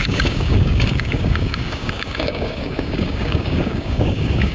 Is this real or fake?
fake